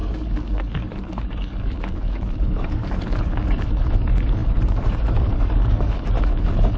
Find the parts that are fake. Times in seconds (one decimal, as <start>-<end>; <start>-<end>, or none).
0.0-6.8